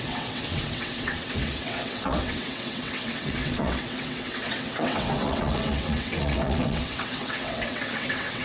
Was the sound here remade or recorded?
remade